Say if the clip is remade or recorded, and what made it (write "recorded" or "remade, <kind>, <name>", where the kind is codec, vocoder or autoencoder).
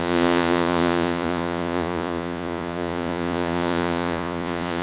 remade, vocoder, Vocos